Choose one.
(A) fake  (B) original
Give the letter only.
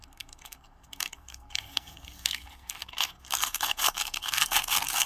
A